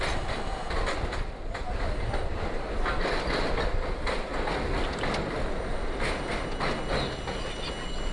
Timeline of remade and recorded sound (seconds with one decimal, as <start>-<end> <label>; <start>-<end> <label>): 0.0-8.1 recorded